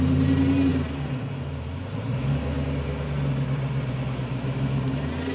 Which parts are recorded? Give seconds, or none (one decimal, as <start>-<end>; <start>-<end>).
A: 0.0-5.3